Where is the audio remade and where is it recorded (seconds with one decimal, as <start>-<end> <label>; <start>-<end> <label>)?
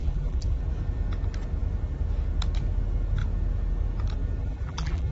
0.0-0.6 remade; 0.6-4.4 recorded; 4.4-5.1 remade